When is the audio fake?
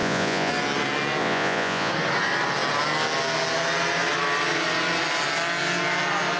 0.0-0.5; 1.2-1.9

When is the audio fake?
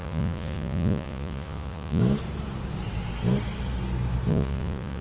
0.0-2.0; 4.3-5.0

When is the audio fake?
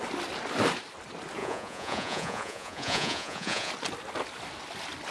1.4-3.7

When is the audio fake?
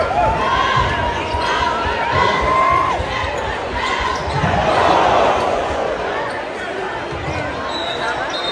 1.0-1.6; 3.6-6.9